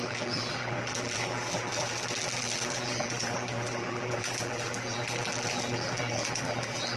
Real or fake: fake